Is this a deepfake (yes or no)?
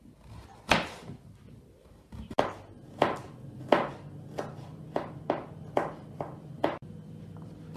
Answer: no